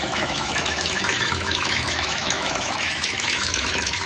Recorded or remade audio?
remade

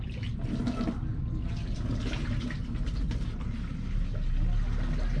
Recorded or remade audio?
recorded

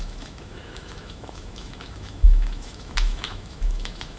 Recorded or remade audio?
remade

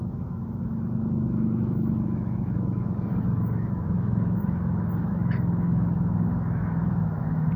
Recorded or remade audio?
remade